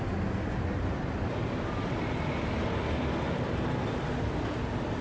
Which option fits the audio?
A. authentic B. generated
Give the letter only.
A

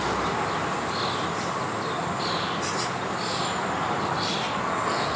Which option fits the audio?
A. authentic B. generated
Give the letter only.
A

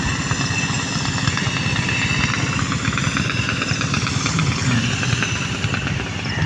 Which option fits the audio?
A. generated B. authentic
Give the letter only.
B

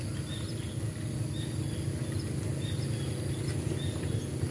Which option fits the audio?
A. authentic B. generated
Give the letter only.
A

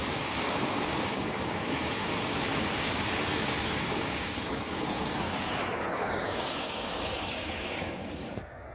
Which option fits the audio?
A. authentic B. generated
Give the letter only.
B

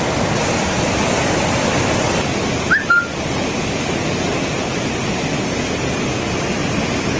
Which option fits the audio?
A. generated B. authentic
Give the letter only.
B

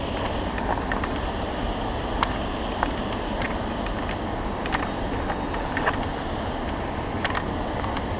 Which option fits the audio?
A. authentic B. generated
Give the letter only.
A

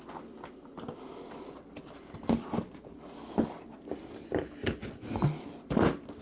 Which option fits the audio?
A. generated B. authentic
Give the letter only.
B